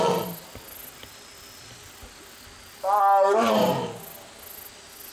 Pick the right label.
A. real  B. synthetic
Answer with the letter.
A